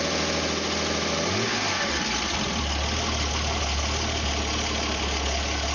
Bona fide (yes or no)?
yes